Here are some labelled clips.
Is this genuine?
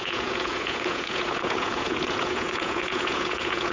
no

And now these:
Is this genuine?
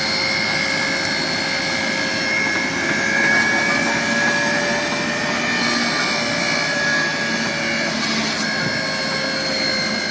yes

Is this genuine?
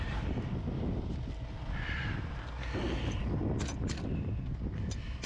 yes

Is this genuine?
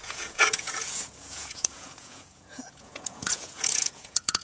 no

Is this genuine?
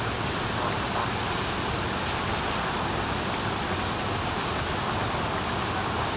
yes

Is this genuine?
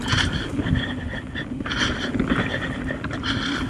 yes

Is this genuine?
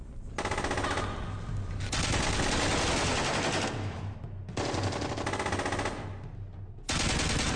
yes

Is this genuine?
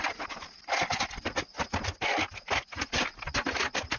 yes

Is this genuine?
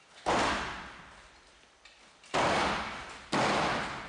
yes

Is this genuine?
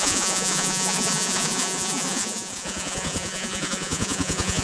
no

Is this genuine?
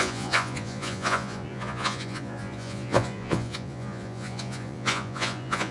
no